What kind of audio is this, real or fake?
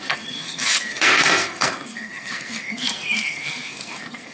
fake